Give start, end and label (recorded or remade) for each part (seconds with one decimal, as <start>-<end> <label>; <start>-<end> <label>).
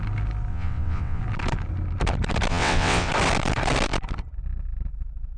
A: 0.0-0.5 recorded; 0.5-1.2 remade; 1.2-2.5 recorded; 2.5-3.1 remade; 3.1-5.4 recorded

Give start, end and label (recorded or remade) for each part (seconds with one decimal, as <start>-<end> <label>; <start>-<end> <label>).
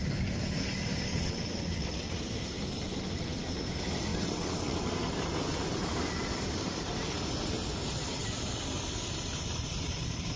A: 0.0-1.1 recorded; 1.1-2.2 remade; 2.2-4.1 recorded; 4.1-4.9 remade; 4.9-10.4 recorded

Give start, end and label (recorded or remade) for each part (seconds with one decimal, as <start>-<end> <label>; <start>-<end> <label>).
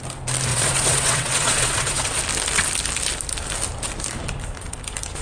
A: 0.0-0.5 recorded; 0.5-2.2 remade; 2.2-5.2 recorded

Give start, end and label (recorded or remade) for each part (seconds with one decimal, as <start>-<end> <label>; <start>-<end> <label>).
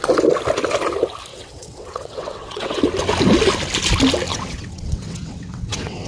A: 0.0-1.3 recorded; 1.3-2.8 remade; 2.8-4.3 recorded; 4.3-6.1 remade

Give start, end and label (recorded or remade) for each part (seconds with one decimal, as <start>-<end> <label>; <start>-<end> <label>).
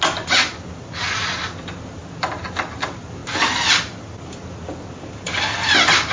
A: 0.0-6.1 recorded